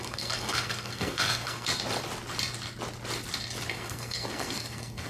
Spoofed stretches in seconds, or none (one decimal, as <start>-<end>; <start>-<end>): 0.0-1.7; 3.7-5.1